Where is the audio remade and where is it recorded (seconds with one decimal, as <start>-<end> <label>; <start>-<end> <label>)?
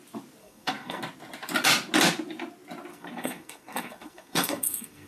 0.0-0.4 recorded; 0.4-1.0 remade; 1.0-2.9 recorded; 2.9-5.1 remade